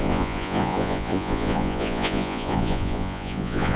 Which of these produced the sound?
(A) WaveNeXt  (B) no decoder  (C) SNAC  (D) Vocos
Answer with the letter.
D